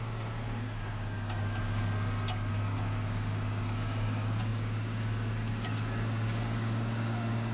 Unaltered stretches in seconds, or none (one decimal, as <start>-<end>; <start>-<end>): 1.8-2.5